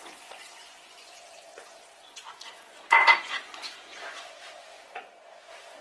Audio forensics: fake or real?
fake